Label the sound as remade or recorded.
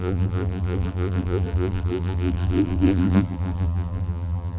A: remade